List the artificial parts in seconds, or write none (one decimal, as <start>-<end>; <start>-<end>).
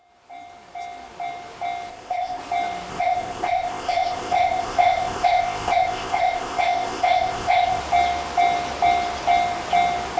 1.9-2.4; 2.9-7.8